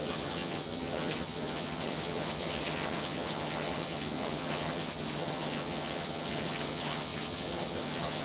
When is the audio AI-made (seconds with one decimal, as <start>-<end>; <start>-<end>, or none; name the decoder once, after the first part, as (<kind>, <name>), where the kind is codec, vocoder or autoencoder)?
0.0-8.2 (vocoder, HiFi-GAN)

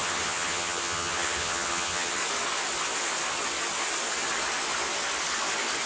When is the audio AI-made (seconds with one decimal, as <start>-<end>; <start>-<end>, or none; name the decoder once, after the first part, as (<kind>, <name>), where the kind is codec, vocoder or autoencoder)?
0.0-2.2 (vocoder, HiFi-GAN)

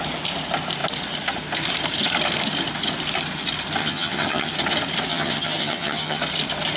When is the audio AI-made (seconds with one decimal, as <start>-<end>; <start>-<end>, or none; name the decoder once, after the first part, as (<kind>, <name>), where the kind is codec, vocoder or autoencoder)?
3.8-4.5 (vocoder, HiFi-GAN); 5.1-6.2

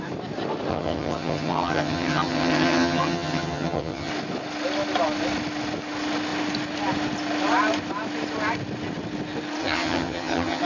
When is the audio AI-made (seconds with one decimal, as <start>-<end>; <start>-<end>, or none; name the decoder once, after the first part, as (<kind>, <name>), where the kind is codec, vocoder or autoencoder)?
0.7-4.1 (vocoder, HiFi-GAN); 9.6-10.6

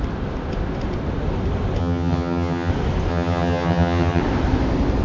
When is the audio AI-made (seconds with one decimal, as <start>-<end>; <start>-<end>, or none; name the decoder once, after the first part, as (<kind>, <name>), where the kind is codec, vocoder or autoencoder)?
1.8-2.7 (vocoder, HiFi-GAN); 3.1-4.2

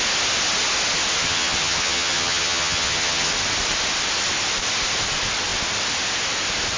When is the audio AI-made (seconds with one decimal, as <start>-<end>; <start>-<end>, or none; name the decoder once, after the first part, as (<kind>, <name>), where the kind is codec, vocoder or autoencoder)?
1.2-3.3 (vocoder, HiFi-GAN)

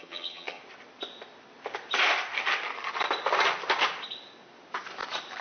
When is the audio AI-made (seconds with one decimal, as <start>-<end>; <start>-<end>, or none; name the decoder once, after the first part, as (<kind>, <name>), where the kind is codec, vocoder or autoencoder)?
0.0-0.6 (vocoder, HiFi-GAN)

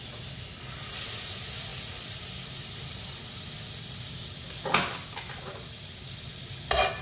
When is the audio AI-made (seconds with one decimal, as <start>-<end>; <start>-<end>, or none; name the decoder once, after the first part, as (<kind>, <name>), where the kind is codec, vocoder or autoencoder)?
none